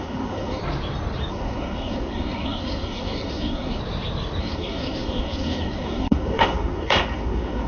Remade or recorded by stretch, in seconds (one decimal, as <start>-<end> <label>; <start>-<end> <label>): 0.0-0.6 remade; 0.6-1.3 recorded; 1.3-3.8 remade; 3.8-4.4 recorded; 4.4-7.7 remade